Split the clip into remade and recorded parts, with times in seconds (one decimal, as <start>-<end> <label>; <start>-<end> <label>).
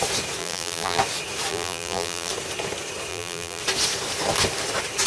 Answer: 0.0-0.4 recorded; 0.4-1.0 remade; 1.0-1.5 recorded; 1.5-2.3 remade; 2.3-3.1 recorded; 3.1-3.6 remade; 3.6-5.1 recorded